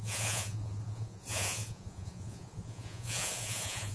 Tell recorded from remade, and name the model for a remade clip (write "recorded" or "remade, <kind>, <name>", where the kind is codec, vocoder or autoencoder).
remade, vocoder, Vocos